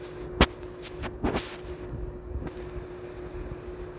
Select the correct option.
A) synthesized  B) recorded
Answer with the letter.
B